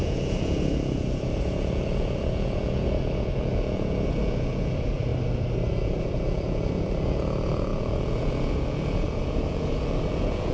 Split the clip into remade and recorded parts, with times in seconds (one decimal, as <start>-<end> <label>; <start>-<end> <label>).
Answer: 0.0-5.1 remade; 5.1-5.7 recorded; 5.7-10.5 remade